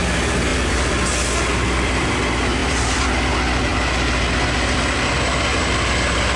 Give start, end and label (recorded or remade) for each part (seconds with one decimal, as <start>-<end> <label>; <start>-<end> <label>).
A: 0.0-0.5 recorded; 0.5-2.1 remade; 2.1-2.6 recorded; 2.6-3.1 remade; 3.1-6.4 recorded